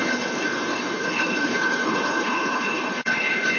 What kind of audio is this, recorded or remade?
remade